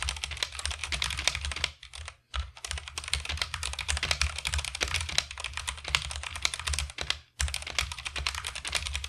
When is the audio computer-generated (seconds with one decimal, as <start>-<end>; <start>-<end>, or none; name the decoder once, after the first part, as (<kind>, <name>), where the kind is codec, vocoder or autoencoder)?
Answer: none